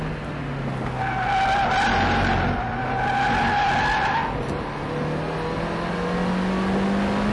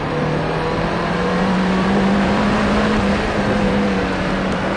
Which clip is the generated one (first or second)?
second